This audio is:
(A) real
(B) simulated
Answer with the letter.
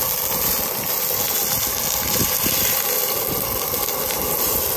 A